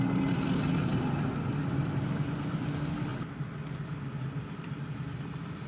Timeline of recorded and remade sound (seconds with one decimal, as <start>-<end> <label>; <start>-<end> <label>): 0.0-3.1 remade; 3.1-3.7 recorded; 3.7-5.7 remade